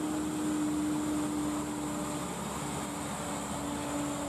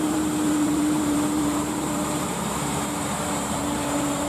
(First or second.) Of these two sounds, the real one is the first